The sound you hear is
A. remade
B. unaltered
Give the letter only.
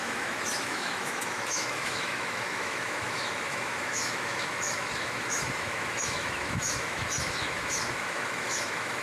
A